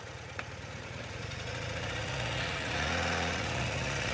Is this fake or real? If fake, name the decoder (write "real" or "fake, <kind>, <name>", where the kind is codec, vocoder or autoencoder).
fake, vocoder, Vocos